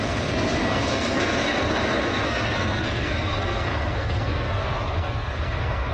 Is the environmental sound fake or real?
fake